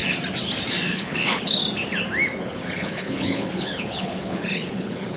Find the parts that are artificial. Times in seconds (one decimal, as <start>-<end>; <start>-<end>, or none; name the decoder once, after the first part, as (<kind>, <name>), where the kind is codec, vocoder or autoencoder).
0.9-1.6 (codec, HILCodec); 2.4-5.2